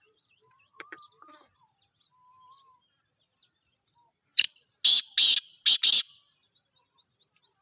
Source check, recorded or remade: recorded